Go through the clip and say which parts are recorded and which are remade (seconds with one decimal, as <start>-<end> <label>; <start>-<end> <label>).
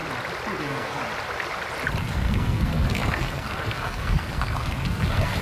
0.0-0.6 recorded; 0.6-1.0 remade; 1.0-2.0 recorded; 2.0-5.4 remade